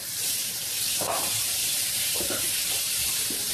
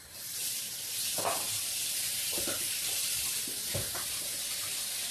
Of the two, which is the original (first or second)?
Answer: second